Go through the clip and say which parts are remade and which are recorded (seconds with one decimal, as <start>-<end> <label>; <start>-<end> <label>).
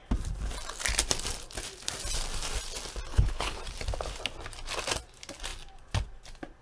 0.0-3.1 recorded; 3.1-3.6 remade; 3.6-6.6 recorded